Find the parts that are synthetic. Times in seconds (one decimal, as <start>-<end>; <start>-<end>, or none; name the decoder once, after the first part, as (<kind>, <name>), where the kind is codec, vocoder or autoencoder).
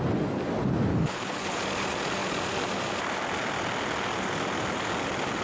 0.9-1.6 (codec, HILCodec)